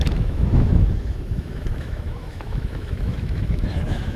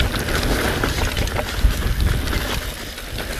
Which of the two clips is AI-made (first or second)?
first